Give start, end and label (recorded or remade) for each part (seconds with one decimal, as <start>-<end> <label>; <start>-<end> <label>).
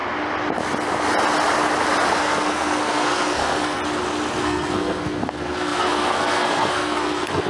0.0-2.2 recorded; 2.2-3.8 remade; 3.8-4.4 recorded; 4.4-7.5 remade